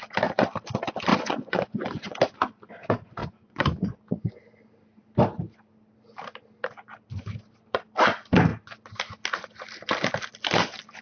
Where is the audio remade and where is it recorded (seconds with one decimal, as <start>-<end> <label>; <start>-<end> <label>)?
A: 0.0-1.1 recorded; 1.1-2.2 remade; 2.2-3.2 recorded; 3.2-4.3 remade; 4.3-11.0 recorded

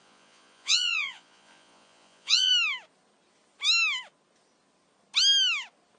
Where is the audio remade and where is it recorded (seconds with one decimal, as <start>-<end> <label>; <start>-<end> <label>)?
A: 0.0-2.5 remade; 2.5-6.0 recorded

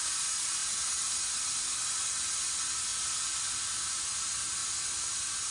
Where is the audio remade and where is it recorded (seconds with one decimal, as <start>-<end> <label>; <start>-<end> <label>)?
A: 0.0-5.5 recorded